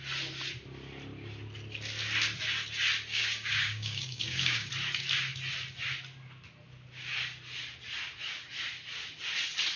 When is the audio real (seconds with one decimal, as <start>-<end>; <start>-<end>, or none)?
0.0-3.1; 4.7-9.8